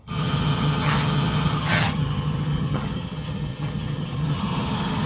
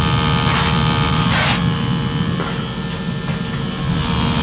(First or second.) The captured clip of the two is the second